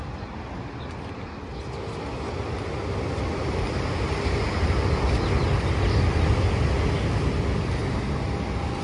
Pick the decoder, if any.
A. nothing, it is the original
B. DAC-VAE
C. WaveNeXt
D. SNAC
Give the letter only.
A